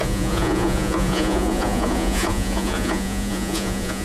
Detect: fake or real fake